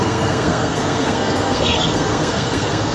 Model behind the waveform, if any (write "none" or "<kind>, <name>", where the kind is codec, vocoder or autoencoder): codec, SNAC